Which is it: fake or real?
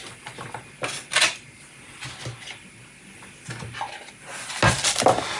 real